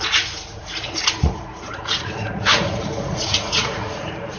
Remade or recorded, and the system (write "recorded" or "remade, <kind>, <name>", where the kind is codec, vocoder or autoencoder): remade, vocoder, Vocos